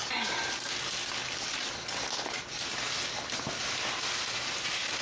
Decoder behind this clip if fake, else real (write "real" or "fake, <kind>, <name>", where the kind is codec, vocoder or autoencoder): real